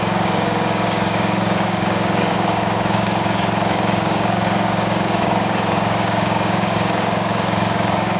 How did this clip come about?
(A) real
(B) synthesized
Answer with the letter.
B